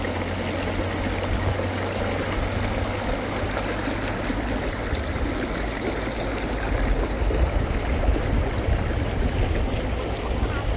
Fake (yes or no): no